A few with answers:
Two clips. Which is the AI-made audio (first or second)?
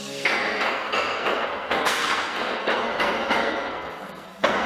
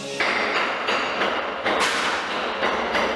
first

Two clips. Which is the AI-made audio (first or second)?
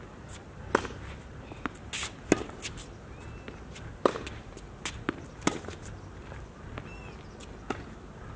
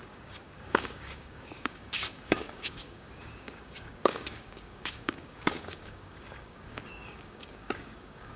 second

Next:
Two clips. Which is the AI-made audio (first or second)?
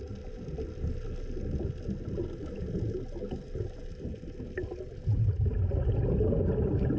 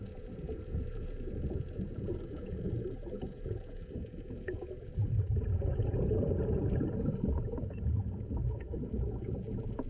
second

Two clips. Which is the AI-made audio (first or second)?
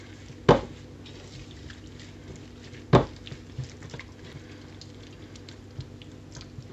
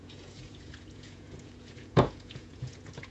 second